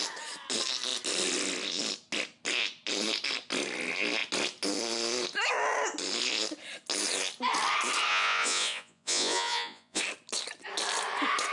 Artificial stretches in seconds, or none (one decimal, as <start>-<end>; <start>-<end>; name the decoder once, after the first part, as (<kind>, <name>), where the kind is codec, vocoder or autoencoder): 8.1-10.0 (vocoder, Vocos)